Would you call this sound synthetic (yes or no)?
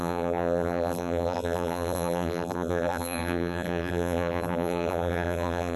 yes